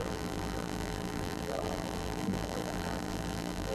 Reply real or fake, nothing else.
fake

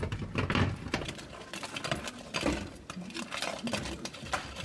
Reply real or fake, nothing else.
real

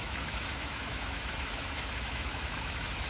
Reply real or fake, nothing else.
fake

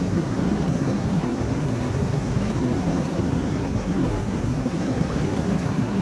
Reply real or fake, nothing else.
fake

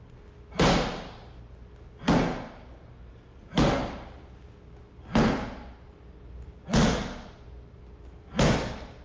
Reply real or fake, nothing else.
real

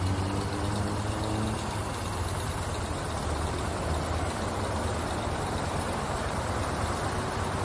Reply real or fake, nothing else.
real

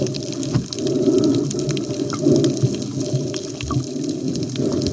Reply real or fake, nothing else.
real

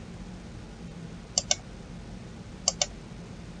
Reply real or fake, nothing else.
real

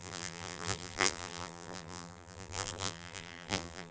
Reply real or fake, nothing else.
fake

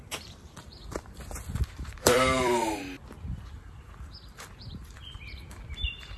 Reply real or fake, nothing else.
fake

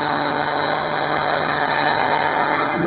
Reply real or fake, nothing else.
fake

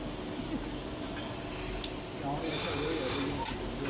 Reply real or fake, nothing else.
real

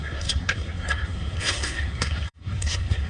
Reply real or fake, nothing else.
fake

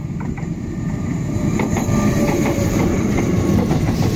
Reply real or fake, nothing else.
fake